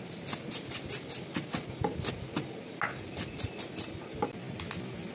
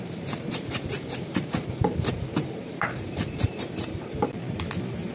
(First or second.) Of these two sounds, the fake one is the second